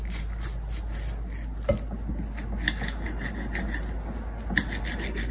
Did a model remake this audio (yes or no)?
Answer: no